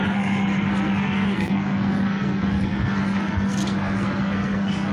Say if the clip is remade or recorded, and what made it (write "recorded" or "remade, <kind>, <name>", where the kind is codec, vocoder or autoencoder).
remade, codec, SNAC